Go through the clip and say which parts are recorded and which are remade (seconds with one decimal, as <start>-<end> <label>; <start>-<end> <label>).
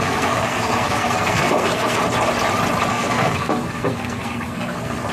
0.0-2.0 remade; 2.0-2.9 recorded; 2.9-5.1 remade